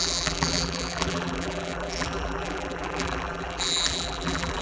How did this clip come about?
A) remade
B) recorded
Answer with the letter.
A